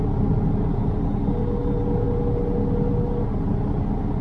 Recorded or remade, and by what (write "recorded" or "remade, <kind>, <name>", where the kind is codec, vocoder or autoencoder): recorded